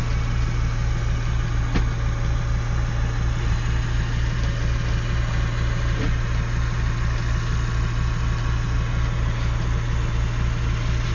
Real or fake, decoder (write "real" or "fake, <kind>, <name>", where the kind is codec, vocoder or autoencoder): real